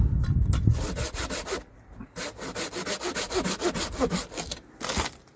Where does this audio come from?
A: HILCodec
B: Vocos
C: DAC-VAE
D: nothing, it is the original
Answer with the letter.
D